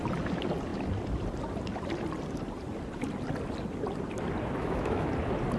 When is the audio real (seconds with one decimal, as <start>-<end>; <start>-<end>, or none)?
0.0-4.6; 5.1-5.6